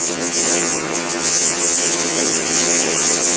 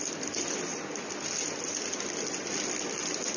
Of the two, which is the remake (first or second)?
first